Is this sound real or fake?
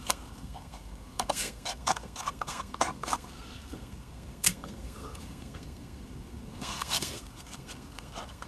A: fake